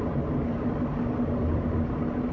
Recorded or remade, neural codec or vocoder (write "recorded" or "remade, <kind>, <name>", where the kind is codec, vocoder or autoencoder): recorded